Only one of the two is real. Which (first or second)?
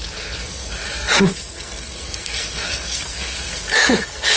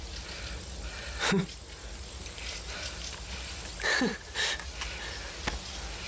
second